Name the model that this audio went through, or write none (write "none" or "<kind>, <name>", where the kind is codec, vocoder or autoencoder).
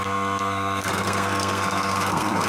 codec, SNAC